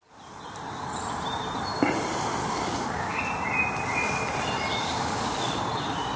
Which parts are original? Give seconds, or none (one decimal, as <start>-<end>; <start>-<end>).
0.0-2.4; 3.2-4.7; 5.6-6.2